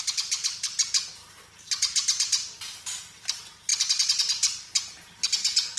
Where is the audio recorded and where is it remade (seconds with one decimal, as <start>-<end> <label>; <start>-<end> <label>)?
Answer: 0.0-5.8 recorded